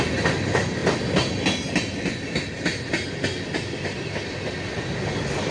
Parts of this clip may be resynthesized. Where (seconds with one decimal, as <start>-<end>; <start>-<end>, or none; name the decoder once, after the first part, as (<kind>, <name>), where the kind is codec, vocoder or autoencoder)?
none